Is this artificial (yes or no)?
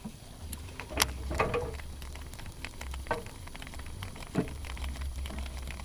no